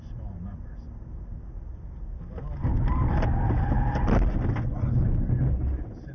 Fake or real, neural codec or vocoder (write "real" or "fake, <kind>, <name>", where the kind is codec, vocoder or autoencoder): real